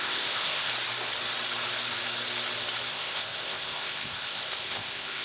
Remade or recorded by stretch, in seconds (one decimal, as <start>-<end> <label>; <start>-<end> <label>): 0.0-0.7 remade; 0.7-2.9 recorded; 2.9-5.2 remade